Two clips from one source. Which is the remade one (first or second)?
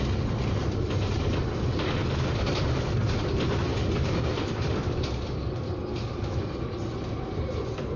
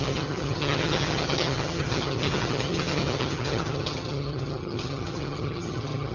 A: second